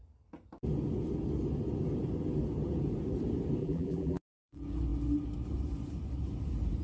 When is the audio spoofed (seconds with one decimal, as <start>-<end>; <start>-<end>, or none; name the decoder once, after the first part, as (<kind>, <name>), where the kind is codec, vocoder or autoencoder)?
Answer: 3.6-4.2 (vocoder, BigVGAN v2)